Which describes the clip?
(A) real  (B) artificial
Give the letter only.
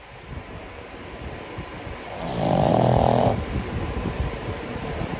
B